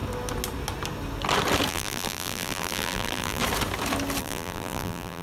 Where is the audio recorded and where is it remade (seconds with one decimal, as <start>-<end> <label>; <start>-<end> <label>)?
0.0-1.7 recorded; 1.7-3.4 remade; 3.4-4.2 recorded; 4.2-5.2 remade